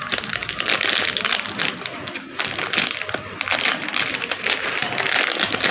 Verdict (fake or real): real